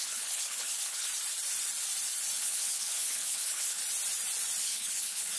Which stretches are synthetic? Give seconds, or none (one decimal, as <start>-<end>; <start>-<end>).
0.0-1.1; 2.4-3.8; 4.6-5.4